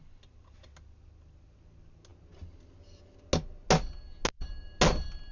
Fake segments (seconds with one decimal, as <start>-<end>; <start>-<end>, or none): none

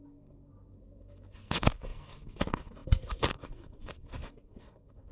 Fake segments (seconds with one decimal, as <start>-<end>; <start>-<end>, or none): 0.0-5.1

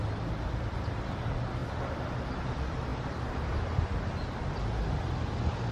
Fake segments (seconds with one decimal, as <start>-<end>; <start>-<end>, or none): none

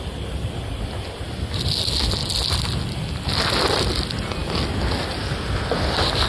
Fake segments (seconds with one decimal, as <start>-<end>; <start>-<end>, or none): none

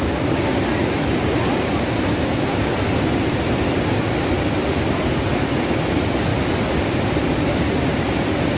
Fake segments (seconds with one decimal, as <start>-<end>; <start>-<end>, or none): none

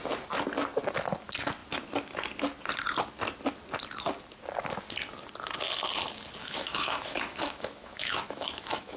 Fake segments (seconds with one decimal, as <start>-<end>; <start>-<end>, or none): 6.4-9.0

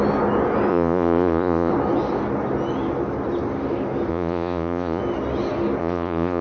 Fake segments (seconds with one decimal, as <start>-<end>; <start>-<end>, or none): 0.7-1.7; 4.1-5.0; 5.8-6.4